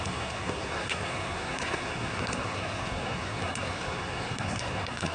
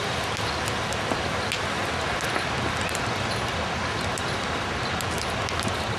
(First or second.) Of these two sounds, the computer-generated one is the first